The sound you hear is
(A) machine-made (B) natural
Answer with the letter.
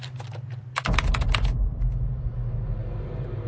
B